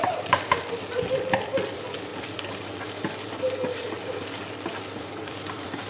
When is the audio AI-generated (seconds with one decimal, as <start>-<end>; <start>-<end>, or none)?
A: 0.0-0.9; 1.7-2.1; 5.0-5.9